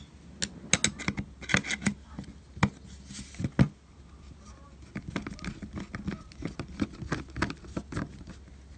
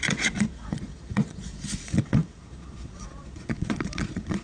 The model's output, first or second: second